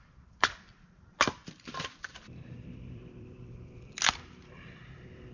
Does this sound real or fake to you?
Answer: fake